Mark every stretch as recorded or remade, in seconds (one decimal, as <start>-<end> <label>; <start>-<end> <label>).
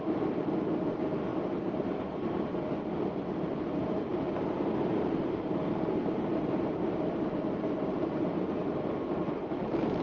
0.0-1.3 recorded; 1.3-2.6 remade; 2.6-4.1 recorded; 4.1-9.2 remade; 9.2-10.0 recorded